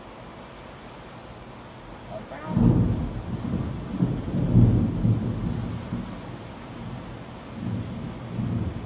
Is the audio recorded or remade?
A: recorded